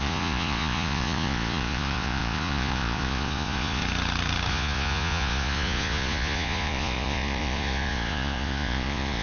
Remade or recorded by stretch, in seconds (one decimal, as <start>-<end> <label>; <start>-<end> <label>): 0.0-3.8 remade; 3.8-4.5 recorded; 4.5-9.2 remade